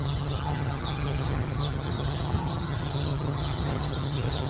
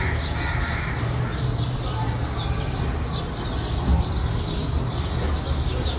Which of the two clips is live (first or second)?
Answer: second